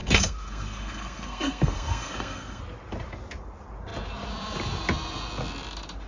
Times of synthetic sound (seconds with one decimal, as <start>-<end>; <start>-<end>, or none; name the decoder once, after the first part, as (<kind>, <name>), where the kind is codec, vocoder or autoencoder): 0.0-2.6 (codec, SNAC)